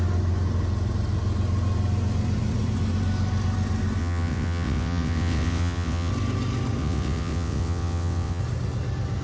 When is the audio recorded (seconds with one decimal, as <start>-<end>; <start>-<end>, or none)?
0.0-4.0; 6.1-6.8; 8.4-9.2